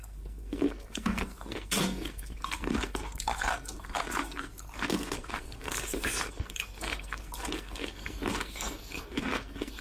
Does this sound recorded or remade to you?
remade